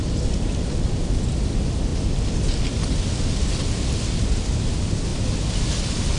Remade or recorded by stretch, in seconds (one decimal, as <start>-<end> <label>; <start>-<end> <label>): 0.0-6.2 recorded